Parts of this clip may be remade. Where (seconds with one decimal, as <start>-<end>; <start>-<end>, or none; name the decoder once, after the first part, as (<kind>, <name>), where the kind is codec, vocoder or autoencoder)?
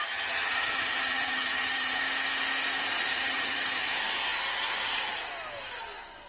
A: 0.0-2.0 (vocoder, HiFi-GAN); 3.1-3.9